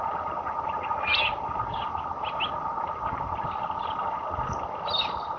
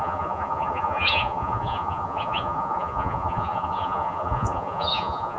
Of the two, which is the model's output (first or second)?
second